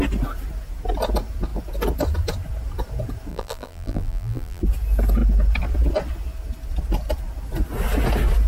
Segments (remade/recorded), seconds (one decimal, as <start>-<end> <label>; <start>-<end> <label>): 0.0-3.3 recorded; 3.3-4.6 remade; 4.6-8.5 recorded